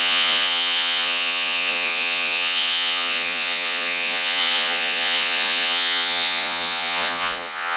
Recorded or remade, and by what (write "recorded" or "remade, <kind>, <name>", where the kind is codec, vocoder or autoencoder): remade, vocoder, Vocos